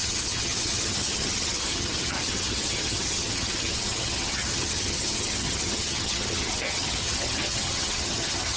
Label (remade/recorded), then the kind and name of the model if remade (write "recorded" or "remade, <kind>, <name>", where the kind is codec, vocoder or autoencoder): remade, vocoder, HiFi-GAN